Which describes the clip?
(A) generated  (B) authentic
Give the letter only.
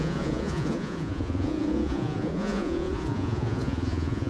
A